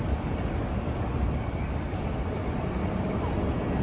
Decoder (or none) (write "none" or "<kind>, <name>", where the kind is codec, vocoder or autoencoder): none